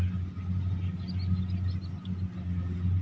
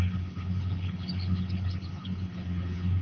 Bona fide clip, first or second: first